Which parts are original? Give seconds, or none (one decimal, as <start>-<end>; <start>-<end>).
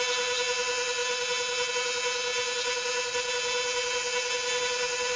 0.0-5.2